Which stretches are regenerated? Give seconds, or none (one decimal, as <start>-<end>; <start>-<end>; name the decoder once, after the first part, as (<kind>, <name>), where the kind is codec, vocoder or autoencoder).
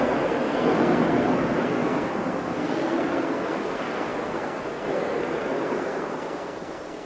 0.0-7.1 (codec, SNAC)